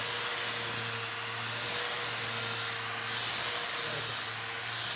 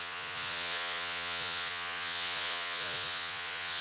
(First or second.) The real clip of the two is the first